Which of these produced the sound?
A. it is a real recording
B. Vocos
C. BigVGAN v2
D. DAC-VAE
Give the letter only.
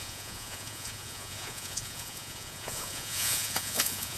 B